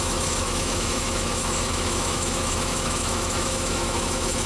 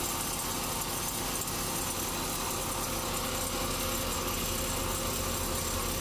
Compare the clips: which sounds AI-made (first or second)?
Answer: first